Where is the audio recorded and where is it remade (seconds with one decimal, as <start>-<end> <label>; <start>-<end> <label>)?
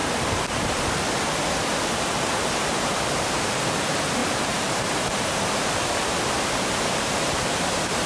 0.0-2.4 recorded; 2.4-8.1 remade